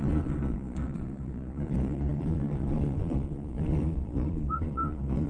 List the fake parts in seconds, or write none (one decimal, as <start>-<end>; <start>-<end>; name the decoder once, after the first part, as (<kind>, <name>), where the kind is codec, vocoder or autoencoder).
0.0-5.3 (vocoder, Vocos)